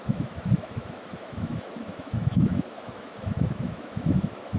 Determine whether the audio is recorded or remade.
remade